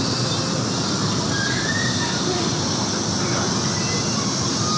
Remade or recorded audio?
remade